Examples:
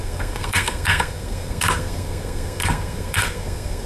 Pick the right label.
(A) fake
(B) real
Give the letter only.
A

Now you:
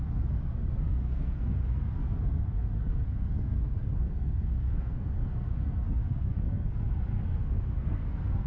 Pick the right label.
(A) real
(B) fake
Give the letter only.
B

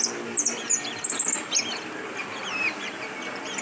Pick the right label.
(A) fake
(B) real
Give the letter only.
B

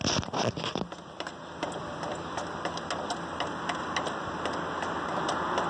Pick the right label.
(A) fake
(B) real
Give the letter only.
B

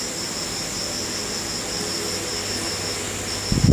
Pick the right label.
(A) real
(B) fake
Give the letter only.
A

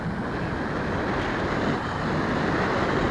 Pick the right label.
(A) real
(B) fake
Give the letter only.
A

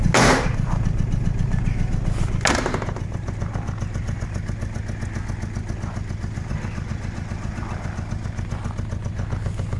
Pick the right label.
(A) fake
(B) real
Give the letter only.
B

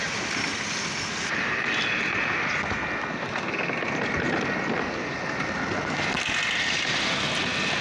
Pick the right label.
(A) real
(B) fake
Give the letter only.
A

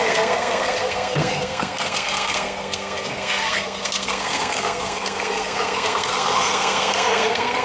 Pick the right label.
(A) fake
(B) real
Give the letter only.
A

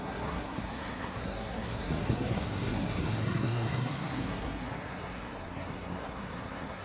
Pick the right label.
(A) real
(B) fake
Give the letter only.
B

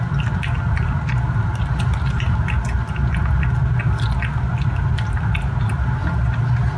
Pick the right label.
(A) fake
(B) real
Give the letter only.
B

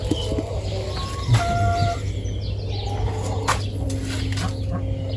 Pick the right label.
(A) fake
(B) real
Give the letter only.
B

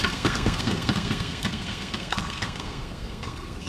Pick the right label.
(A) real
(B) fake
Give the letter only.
B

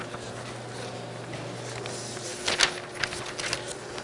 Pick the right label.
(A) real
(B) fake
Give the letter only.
A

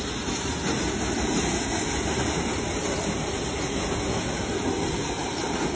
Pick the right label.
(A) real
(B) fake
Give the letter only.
A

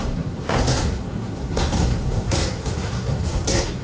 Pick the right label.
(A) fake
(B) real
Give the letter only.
A